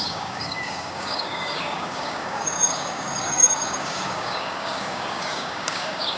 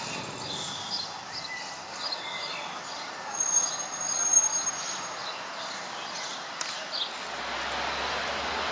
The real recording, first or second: second